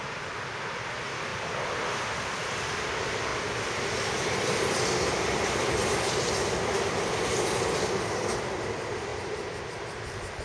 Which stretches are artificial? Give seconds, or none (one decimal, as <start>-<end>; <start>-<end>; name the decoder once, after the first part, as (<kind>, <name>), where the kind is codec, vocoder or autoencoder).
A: 1.3-1.9 (vocoder, BigVGAN v2); 3.3-8.4; 9.1-9.6